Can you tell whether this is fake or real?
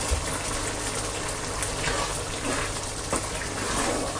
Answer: real